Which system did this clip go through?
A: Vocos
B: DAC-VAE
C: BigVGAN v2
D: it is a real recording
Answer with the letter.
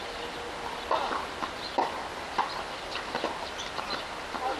D